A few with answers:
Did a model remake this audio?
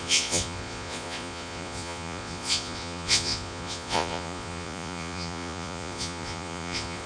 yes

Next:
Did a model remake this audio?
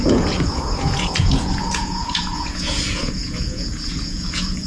yes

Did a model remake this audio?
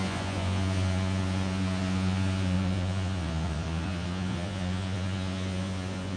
yes